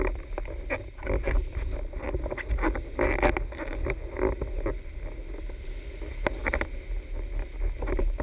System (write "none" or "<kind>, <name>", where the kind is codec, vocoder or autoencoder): none